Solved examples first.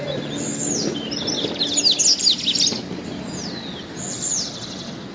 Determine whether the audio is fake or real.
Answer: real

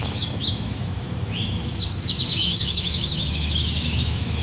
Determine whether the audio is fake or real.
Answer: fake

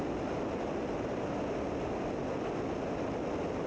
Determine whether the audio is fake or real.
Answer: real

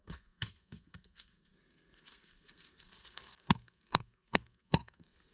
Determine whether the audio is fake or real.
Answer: fake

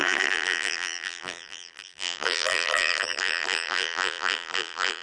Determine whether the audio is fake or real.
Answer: fake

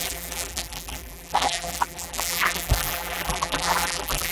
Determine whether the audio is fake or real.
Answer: fake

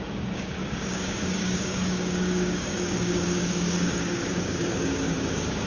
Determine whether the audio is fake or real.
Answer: fake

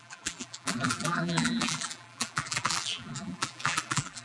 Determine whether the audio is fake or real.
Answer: fake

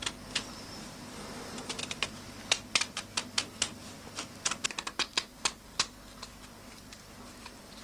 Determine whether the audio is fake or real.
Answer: real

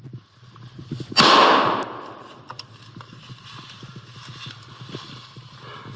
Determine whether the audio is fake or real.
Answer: real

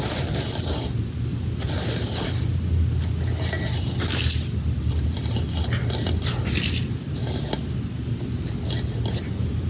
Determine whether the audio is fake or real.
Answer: real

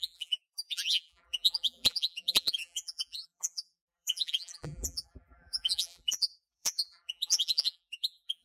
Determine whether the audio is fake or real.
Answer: fake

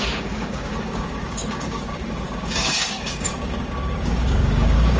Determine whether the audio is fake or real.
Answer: fake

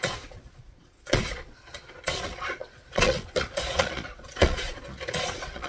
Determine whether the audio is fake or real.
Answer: fake